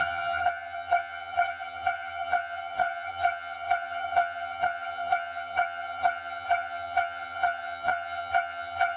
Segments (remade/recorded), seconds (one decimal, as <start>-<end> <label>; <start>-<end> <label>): 0.0-9.0 remade